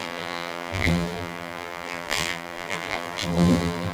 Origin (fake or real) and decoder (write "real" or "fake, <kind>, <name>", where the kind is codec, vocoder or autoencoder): fake, vocoder, BigVGAN v2